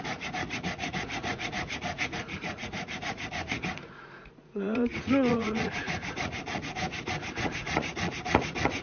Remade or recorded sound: remade